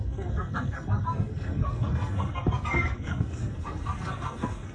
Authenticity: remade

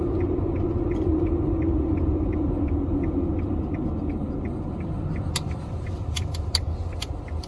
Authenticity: recorded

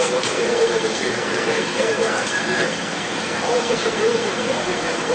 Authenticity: remade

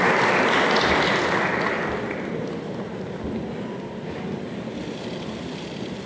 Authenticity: recorded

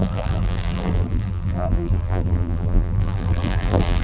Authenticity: remade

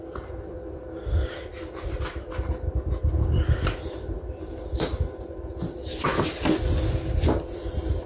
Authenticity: recorded